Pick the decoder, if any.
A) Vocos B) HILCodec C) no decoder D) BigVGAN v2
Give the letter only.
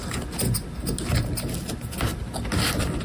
C